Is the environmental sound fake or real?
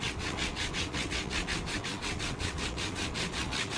fake